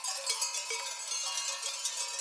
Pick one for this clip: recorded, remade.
recorded